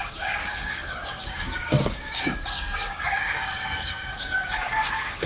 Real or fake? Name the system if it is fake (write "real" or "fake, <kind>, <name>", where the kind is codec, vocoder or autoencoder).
fake, codec, DAC